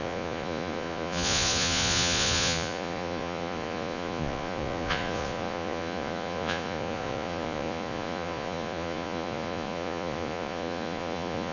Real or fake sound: fake